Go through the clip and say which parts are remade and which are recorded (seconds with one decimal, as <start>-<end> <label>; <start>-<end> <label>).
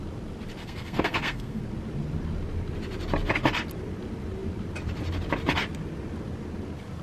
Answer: 0.0-0.6 recorded; 0.6-1.6 remade; 1.6-7.0 recorded